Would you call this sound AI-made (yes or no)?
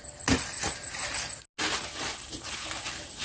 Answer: no